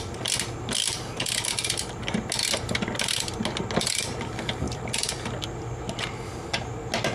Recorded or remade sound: recorded